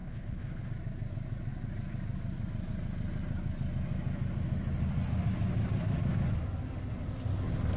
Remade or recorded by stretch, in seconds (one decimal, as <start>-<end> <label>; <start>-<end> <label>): 0.0-0.7 remade; 0.7-7.8 recorded